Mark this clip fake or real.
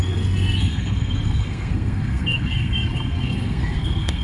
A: fake